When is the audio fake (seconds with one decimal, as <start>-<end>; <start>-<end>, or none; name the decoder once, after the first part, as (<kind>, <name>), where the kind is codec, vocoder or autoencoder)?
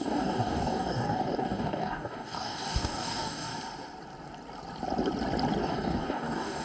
0.0-3.5 (codec, DAC); 5.6-6.6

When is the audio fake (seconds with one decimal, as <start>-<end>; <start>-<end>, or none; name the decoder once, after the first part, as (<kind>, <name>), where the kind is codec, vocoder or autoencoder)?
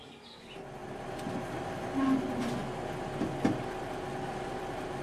none